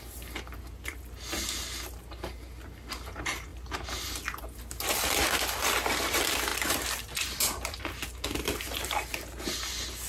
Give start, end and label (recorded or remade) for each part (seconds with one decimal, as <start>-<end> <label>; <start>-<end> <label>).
0.0-6.5 recorded; 6.5-7.8 remade; 7.8-10.1 recorded